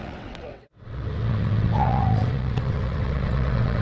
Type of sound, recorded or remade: remade